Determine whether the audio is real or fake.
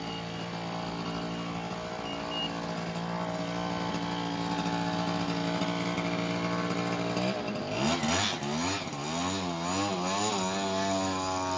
real